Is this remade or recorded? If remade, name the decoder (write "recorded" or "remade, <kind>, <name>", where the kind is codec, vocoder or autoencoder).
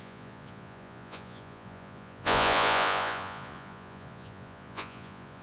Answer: remade, vocoder, Vocos